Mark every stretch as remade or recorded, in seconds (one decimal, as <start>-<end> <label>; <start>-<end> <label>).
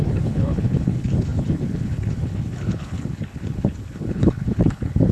0.0-5.1 remade